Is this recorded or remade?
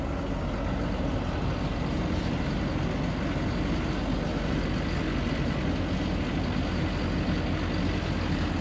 recorded